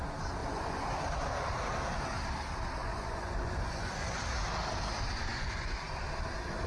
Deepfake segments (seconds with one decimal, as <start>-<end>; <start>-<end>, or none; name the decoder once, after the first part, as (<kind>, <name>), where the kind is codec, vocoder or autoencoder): 0.4-0.9 (vocoder, Vocos); 2.8-4.2; 5.3-6.0